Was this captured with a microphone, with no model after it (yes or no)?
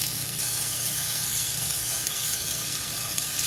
no